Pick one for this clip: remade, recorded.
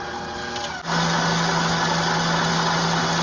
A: recorded